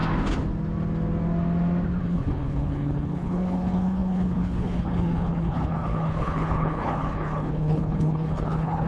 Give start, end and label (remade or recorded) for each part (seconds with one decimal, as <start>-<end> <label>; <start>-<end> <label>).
0.0-2.0 recorded; 2.0-8.9 remade

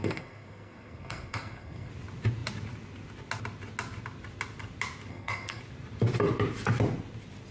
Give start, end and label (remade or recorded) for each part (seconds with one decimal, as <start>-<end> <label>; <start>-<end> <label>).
0.0-1.9 remade; 1.9-5.1 recorded; 5.1-5.6 remade; 5.6-7.5 recorded

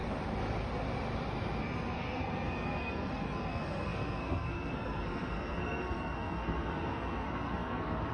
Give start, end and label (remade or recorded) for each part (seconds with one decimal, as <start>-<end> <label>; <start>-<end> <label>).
0.0-1.6 recorded; 1.6-8.1 remade

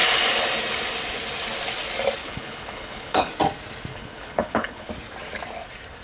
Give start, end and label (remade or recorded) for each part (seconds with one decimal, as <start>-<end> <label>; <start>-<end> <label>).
0.0-2.2 recorded; 2.2-3.3 remade; 3.3-3.9 recorded; 3.9-4.9 remade; 4.9-6.0 recorded

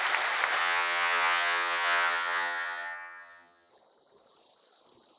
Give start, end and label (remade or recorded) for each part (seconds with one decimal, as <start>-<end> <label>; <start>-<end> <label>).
0.0-0.6 recorded; 0.6-3.7 remade; 3.7-5.2 recorded

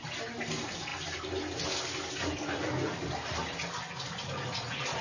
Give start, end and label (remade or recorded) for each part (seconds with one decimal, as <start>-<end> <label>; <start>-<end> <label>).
0.0-5.0 recorded

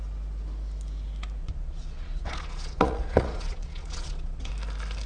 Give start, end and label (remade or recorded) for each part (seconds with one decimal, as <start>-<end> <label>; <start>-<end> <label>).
0.0-1.4 recorded; 1.4-4.5 remade; 4.5-5.1 recorded